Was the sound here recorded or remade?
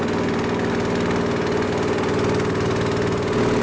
recorded